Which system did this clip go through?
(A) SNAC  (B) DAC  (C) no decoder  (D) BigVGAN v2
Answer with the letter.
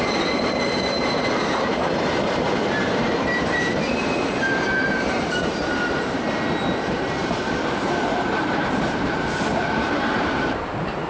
D